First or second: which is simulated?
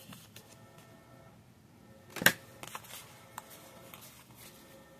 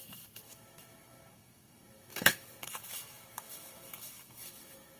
second